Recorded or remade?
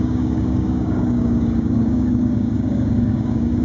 remade